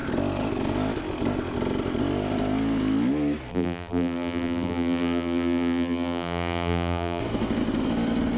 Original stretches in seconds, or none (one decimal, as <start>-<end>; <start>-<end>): 0.0-3.5; 7.2-8.4